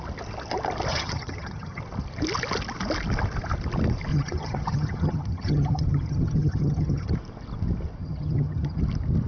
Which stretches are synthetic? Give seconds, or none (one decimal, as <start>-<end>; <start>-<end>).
0.9-1.8; 4.1-7.1; 8.0-8.8